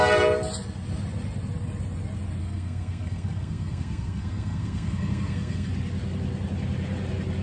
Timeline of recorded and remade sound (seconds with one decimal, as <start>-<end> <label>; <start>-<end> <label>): 0.0-2.4 recorded; 2.4-5.7 remade; 5.7-7.4 recorded